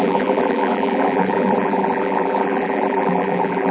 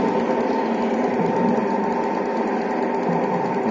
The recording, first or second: second